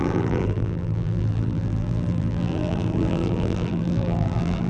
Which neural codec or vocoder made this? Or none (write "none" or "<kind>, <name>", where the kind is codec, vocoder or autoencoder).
vocoder, BigVGAN v2